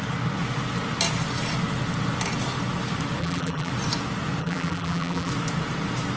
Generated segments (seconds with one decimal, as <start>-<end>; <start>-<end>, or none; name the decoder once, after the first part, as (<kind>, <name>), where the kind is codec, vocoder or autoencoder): 3.2-3.7 (vocoder, BigVGAN v2); 4.4-5.3